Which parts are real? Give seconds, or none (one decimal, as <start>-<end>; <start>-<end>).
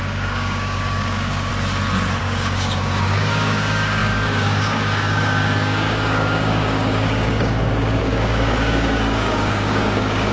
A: 1.5-2.2